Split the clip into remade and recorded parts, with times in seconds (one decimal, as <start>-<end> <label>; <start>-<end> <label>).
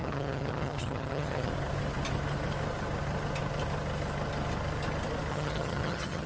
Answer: 0.0-1.5 remade; 1.5-5.3 recorded; 5.3-6.3 remade